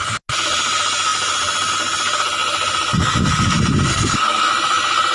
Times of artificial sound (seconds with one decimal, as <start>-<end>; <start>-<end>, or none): 3.9-4.5

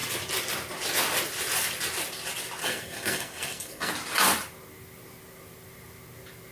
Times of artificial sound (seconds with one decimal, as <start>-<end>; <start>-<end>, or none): 2.6-3.9

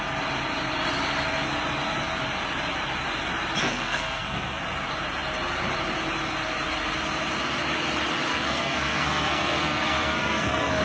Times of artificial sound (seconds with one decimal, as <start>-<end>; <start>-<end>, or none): 3.6-4.6; 8.3-10.8

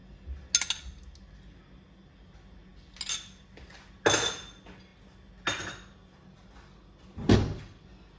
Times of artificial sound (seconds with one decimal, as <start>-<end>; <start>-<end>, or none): none

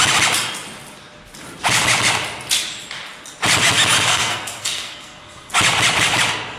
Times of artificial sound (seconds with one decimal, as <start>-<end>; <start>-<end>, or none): 4.1-5.5

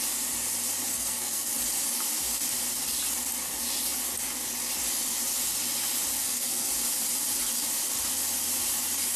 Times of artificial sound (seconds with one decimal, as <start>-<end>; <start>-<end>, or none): 0.9-1.5; 6.2-6.7